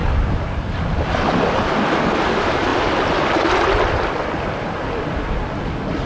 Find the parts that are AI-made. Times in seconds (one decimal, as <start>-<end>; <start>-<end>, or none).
none